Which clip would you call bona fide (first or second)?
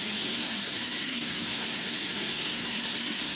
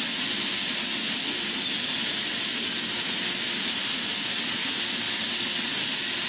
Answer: second